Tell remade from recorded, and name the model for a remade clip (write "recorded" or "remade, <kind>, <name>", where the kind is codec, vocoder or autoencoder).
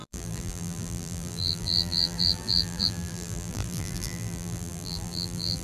remade, vocoder, BigVGAN v2